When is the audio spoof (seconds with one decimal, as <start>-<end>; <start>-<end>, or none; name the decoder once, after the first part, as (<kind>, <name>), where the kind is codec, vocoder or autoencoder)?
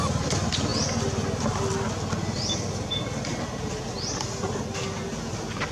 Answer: none